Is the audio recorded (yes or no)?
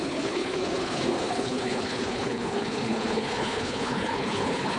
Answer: no